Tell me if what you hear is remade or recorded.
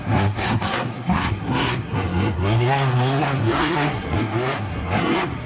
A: remade